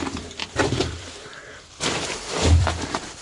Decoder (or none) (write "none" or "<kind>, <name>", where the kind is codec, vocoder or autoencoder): vocoder, BigVGAN v2